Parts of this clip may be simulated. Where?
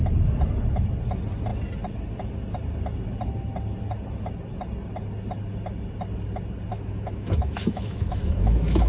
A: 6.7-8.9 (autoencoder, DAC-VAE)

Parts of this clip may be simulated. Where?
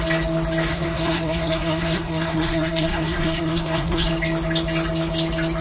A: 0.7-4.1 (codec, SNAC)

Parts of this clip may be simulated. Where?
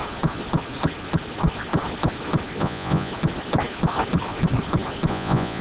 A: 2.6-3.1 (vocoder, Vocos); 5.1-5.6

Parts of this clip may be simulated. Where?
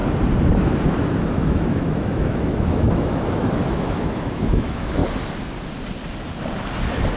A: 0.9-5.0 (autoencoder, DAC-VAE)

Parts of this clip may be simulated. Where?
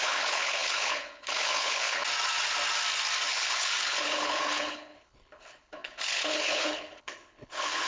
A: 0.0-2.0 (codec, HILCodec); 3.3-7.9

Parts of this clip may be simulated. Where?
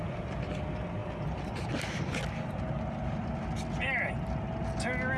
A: none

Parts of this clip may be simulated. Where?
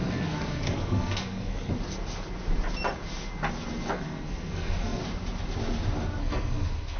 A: 0.0-1.7 (codec, SNAC); 3.9-5.0; 6.2-7.0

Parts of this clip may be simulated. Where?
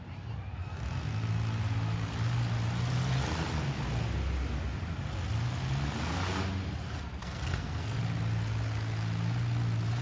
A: 7.2-8.0 (codec, SNAC)